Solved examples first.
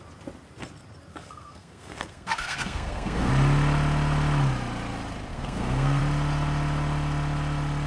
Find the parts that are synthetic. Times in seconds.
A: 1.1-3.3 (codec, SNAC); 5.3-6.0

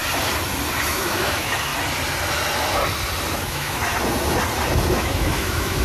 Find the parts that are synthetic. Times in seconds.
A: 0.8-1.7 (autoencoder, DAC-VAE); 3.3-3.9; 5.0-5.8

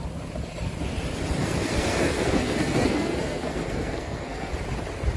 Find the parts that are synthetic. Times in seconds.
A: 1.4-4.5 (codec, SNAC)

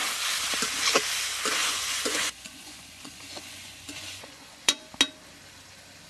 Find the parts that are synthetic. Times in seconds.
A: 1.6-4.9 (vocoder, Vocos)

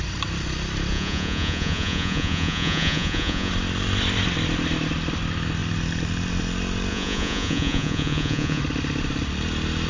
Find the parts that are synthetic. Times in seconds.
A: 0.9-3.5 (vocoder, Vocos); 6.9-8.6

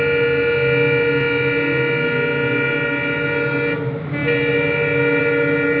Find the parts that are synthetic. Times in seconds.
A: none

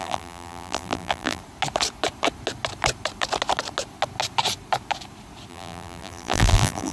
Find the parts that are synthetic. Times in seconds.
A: 0.0-1.4 (vocoder, BigVGAN v2); 5.5-6.9